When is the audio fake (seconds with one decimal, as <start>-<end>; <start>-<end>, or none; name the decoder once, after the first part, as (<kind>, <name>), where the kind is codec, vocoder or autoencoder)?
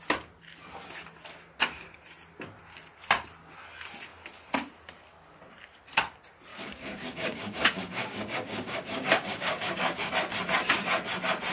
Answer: 6.5-10.1 (codec, DAC)